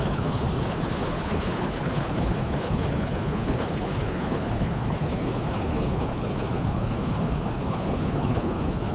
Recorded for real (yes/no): no